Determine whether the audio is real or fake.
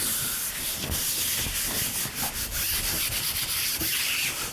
real